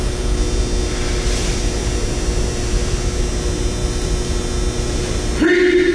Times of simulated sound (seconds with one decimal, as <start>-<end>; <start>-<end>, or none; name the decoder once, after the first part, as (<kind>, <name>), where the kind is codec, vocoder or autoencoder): none